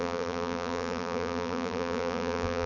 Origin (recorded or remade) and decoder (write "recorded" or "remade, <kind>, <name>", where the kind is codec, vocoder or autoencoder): remade, vocoder, BigVGAN v2